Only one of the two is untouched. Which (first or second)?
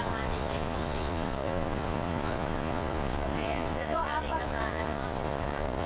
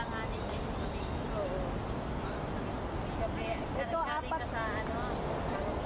second